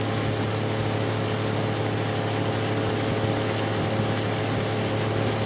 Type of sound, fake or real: real